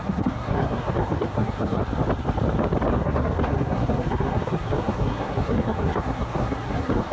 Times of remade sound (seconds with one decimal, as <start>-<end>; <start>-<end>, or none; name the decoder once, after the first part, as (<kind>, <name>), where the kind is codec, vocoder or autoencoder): 0.0-1.8 (codec, SNAC); 2.9-7.1